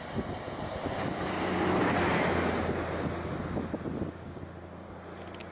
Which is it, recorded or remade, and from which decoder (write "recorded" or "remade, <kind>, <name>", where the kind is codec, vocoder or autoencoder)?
recorded